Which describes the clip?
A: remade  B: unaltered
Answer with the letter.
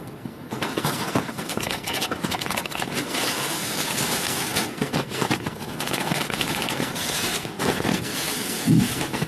A